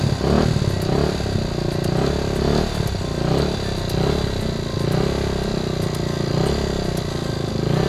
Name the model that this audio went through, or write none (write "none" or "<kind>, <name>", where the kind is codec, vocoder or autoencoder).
none